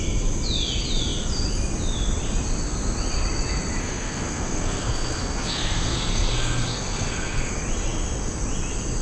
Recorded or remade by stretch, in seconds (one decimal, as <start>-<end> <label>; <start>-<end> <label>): 0.0-3.8 recorded; 3.8-7.5 remade; 7.5-9.0 recorded

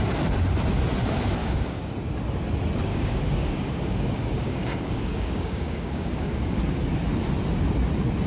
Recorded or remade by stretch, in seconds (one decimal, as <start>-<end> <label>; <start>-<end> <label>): 0.0-1.4 recorded; 1.4-1.9 remade; 1.9-2.9 recorded; 2.9-6.6 remade; 6.6-8.3 recorded

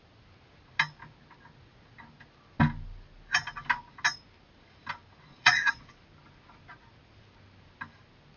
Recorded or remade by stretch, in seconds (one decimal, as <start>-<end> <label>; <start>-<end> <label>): 0.0-5.3 recorded; 5.3-5.8 remade; 5.8-8.4 recorded

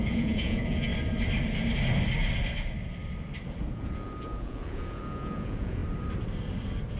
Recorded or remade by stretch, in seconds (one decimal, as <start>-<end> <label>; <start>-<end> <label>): 0.0-0.9 remade; 0.9-3.7 recorded; 3.7-5.8 remade; 5.8-7.0 recorded

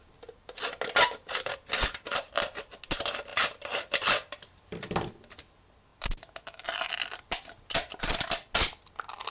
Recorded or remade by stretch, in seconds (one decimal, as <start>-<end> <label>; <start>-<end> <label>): 0.0-3.3 recorded; 3.3-5.1 remade; 5.1-5.9 recorded; 5.9-6.9 remade; 6.9-9.3 recorded

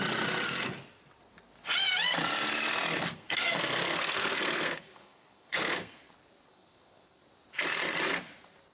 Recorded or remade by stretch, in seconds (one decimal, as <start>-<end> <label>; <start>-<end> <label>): 0.0-3.1 recorded; 3.1-6.1 remade; 6.1-6.5 recorded; 6.5-7.2 remade; 7.2-8.7 recorded